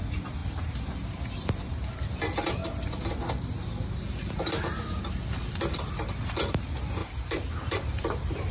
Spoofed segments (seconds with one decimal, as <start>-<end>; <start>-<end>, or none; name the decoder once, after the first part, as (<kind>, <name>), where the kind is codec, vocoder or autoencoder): 0.4-1.9 (vocoder, BigVGAN v2); 7.0-8.5